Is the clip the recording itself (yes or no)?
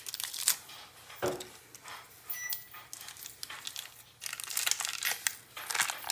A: yes